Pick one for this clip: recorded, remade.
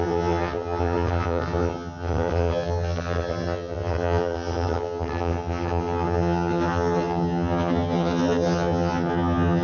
remade